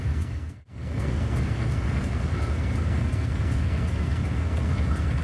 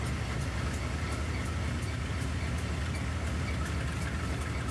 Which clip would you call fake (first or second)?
first